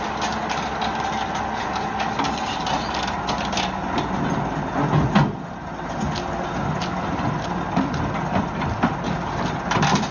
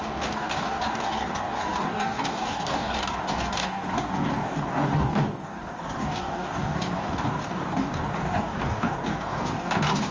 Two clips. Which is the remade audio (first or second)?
second